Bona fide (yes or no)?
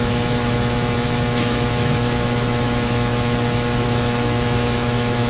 no